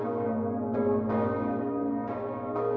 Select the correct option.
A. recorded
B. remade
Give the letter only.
B